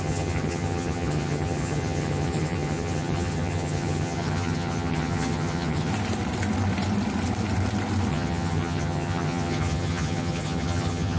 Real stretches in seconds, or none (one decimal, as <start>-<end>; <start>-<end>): 5.9-8.1